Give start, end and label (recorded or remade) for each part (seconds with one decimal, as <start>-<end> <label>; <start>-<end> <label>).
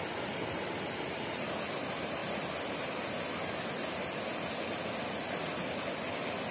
0.0-6.5 recorded